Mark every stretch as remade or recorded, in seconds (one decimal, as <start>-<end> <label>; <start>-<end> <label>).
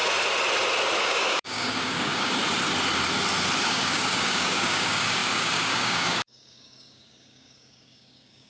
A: 0.0-1.0 recorded; 1.0-2.4 remade; 2.4-3.6 recorded; 3.6-8.5 remade